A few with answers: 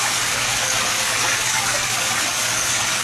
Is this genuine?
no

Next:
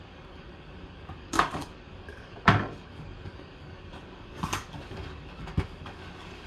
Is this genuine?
no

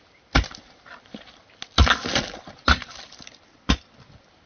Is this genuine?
yes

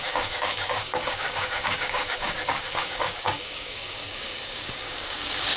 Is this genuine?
no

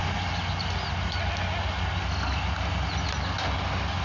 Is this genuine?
yes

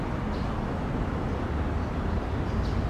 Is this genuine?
yes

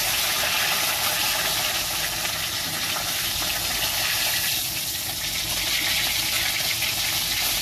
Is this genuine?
yes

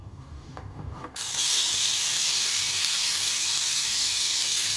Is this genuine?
no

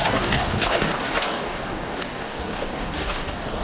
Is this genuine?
no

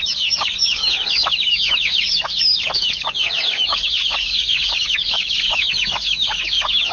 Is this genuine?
no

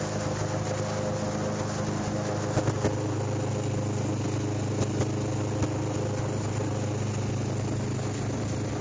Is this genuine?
yes